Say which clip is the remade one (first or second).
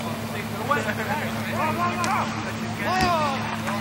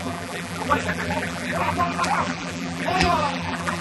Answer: second